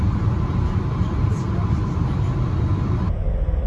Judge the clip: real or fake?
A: real